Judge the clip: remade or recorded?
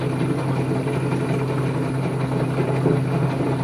recorded